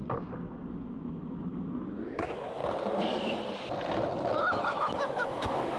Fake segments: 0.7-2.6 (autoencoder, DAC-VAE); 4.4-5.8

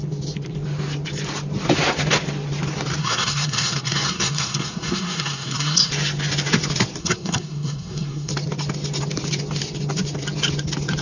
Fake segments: 3.0-5.9 (codec, SNAC); 7.0-8.3

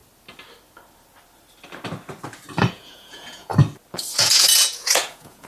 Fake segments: 2.7-3.5 (vocoder, Vocos); 4.1-5.5